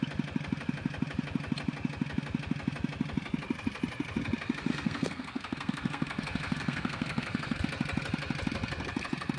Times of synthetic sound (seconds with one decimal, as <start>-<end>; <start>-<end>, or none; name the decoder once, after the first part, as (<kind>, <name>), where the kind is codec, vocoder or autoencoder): 4.7-7.6 (codec, SNAC)